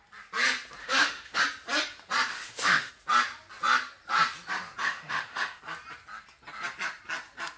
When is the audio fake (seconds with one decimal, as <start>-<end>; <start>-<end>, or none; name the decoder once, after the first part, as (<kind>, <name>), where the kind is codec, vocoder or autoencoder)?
0.8-1.4 (autoencoder, DAC-VAE); 2.3-2.9; 4.8-5.6